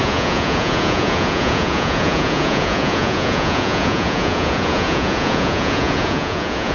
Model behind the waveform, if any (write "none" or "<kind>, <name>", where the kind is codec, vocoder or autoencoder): vocoder, Vocos